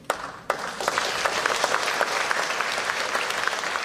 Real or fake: real